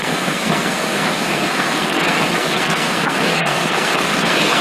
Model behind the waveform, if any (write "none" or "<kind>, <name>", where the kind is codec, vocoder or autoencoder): codec, SNAC